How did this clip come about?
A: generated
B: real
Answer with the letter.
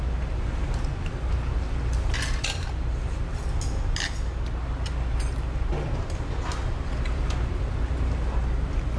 B